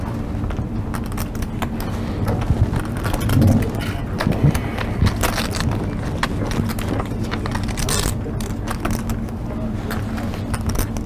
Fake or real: real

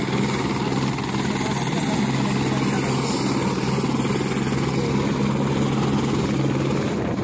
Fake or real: real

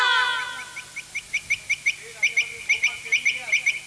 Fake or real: real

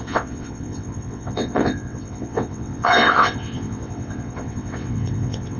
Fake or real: fake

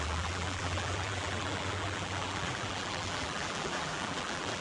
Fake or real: fake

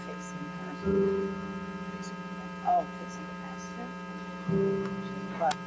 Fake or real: real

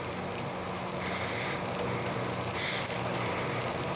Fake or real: real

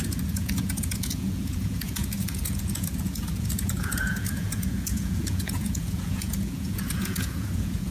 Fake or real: fake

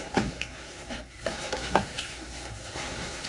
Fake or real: fake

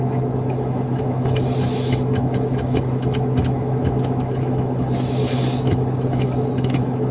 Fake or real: fake